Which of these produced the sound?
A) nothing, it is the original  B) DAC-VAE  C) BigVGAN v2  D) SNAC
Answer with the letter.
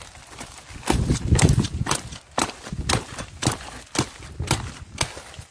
A